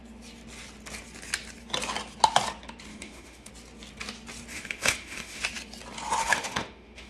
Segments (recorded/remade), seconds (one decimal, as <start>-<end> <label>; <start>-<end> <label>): 0.0-2.9 recorded; 2.9-3.5 remade; 3.5-4.5 recorded; 4.5-5.4 remade; 5.4-6.2 recorded; 6.2-7.1 remade